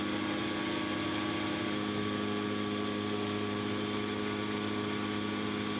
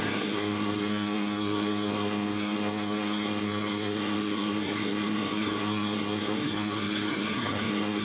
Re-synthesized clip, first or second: second